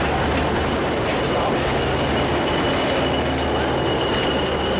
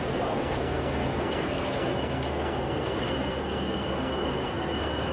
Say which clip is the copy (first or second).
second